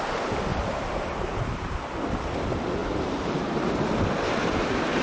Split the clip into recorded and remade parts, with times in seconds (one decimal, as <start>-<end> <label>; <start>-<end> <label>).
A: 0.0-0.5 recorded; 0.5-1.8 remade; 1.8-2.8 recorded; 2.8-3.8 remade; 3.8-5.0 recorded